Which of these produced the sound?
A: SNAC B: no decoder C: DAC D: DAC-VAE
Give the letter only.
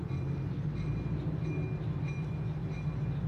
B